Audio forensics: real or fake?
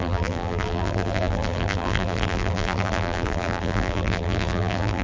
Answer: fake